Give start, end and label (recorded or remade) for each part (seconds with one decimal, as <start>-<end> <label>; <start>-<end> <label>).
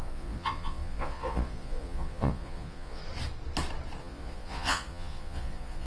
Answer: 0.0-3.0 remade; 3.0-4.0 recorded; 4.0-5.9 remade